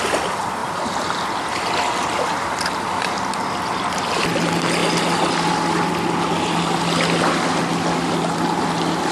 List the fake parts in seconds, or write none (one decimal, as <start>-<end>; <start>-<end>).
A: none